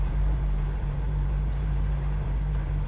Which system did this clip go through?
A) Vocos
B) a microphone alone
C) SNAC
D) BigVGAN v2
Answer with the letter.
D